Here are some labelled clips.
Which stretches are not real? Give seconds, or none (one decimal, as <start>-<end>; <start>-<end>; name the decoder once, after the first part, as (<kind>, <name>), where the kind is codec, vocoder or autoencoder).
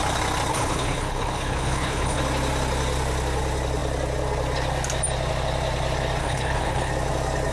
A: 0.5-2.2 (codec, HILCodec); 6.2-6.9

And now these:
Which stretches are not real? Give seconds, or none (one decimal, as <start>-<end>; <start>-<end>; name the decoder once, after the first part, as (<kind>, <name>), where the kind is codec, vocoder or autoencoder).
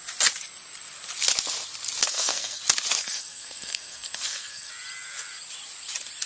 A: 2.0-2.6 (codec, SNAC); 3.0-4.7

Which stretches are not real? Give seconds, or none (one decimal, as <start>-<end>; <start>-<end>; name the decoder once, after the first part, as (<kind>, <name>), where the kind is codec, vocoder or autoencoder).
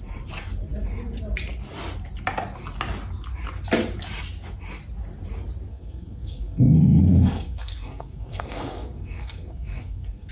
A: 5.7-10.3 (codec, SNAC)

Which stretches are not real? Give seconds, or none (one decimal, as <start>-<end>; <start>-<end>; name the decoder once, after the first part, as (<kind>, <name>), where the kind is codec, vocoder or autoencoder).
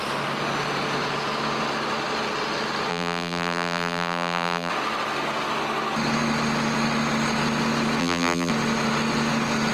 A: 2.9-4.7 (vocoder, BigVGAN v2); 8.0-8.5